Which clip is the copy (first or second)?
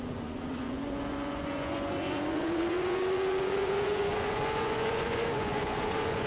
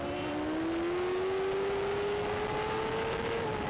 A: first